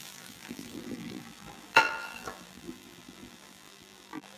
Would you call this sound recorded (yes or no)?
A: no